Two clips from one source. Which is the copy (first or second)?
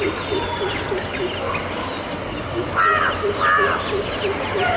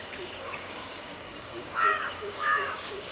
second